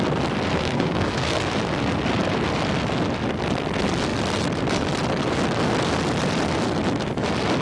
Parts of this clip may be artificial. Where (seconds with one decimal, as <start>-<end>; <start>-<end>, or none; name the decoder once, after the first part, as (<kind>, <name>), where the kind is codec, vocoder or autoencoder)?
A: 0.6-1.5 (codec, SNAC)